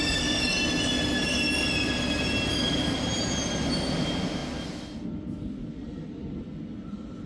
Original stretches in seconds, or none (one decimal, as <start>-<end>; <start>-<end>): 0.0-7.3